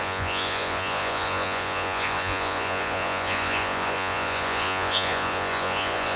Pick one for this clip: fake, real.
fake